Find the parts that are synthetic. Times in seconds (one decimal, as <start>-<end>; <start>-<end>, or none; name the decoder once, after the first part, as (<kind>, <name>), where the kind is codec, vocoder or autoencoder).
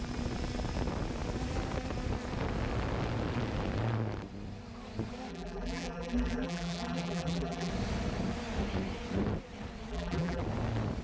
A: 5.3-7.7 (vocoder, BigVGAN v2); 9.9-10.4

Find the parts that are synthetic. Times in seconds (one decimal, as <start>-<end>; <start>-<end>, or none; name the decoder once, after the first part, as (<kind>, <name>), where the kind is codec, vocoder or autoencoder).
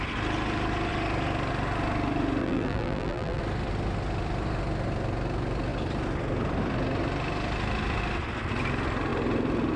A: 2.4-3.4 (vocoder, BigVGAN v2)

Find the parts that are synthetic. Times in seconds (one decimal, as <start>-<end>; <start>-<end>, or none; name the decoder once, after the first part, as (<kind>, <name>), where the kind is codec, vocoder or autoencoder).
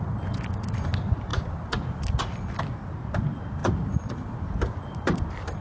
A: none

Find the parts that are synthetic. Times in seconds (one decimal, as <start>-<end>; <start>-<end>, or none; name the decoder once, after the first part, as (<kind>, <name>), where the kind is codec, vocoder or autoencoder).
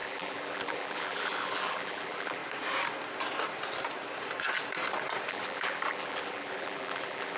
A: 0.0-2.4 (vocoder, BigVGAN v2); 5.3-7.4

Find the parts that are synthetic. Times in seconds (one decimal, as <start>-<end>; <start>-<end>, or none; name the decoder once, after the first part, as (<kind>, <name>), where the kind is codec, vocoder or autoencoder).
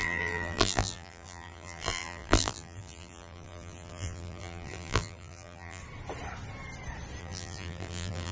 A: 0.0-5.8 (vocoder, BigVGAN v2); 7.2-8.3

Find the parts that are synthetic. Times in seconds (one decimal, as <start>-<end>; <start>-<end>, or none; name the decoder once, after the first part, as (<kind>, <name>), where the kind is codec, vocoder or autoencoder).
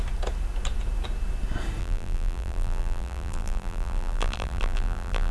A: 1.8-5.3 (vocoder, BigVGAN v2)